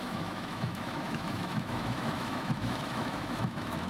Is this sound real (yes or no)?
no